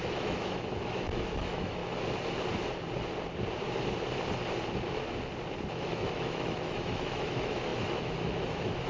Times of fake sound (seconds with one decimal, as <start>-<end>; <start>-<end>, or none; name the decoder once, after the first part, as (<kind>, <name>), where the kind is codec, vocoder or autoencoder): 0.0-1.8 (autoencoder, DAC-VAE); 5.7-8.9